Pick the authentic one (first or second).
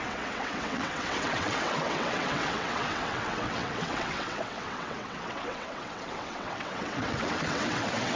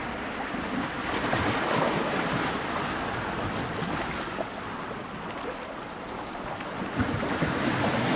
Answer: second